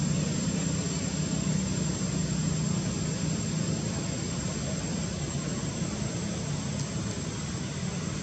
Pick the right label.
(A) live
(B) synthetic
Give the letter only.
A